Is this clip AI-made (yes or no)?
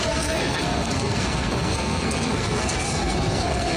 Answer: yes